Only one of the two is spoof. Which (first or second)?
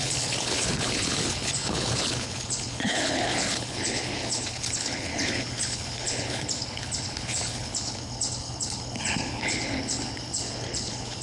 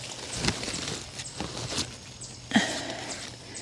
first